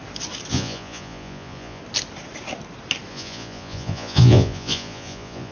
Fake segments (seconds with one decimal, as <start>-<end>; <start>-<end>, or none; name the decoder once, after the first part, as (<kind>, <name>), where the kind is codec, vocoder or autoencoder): 0.5-1.8 (vocoder, Vocos); 3.1-5.5